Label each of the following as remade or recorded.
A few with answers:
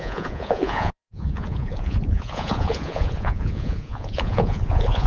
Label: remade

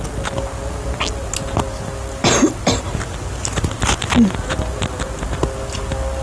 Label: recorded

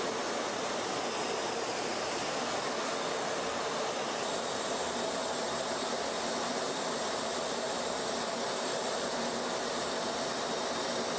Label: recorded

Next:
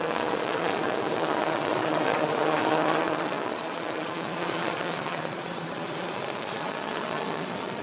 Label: remade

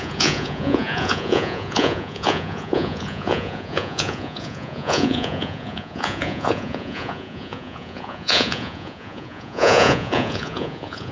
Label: remade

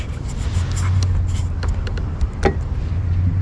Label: recorded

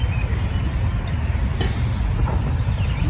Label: recorded